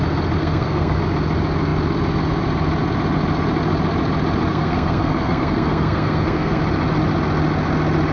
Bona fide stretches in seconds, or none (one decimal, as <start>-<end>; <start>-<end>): 0.0-0.4; 1.0-4.5; 6.6-8.1